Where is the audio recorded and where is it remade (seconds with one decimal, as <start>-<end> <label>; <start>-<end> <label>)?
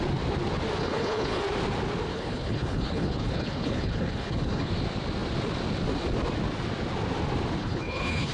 0.0-0.8 recorded; 0.8-1.4 remade; 1.4-2.1 recorded; 2.1-4.7 remade; 4.7-7.6 recorded; 7.6-8.3 remade